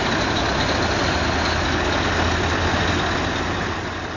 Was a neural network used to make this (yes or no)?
no